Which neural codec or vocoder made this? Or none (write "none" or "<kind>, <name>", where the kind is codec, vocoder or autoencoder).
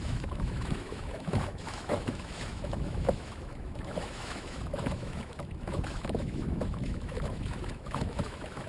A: autoencoder, DAC-VAE